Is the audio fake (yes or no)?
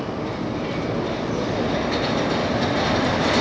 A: no